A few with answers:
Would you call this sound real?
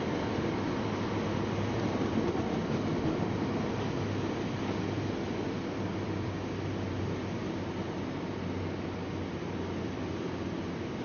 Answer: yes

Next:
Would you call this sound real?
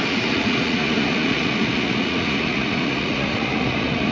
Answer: no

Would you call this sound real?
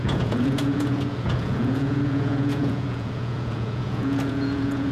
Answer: no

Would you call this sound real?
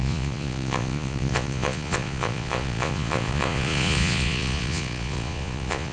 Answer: no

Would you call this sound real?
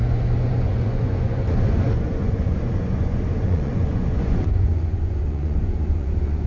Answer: no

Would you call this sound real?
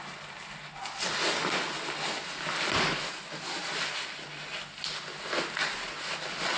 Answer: yes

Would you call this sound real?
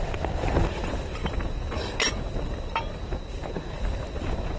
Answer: yes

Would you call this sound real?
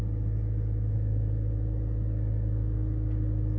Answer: yes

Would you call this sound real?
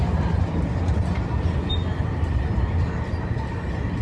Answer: yes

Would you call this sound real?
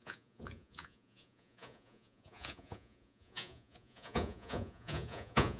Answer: no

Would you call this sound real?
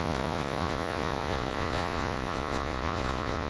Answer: no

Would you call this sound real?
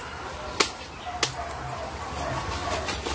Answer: yes